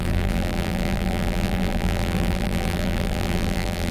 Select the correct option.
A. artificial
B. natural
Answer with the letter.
A